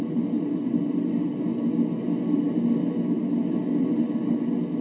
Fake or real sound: real